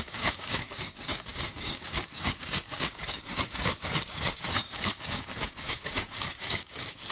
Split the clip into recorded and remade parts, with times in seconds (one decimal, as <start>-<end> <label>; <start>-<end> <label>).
0.0-7.1 remade